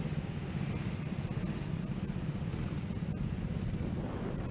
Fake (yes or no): no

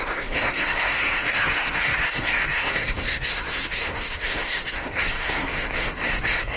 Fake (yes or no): yes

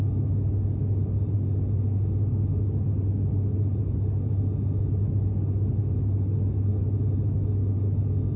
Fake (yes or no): no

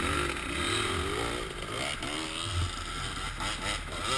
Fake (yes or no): no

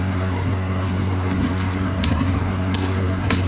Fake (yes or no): yes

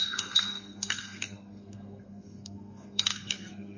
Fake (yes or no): yes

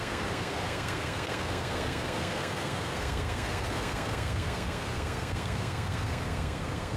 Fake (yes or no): yes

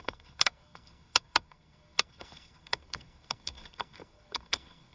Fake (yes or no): yes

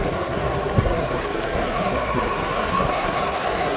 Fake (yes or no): yes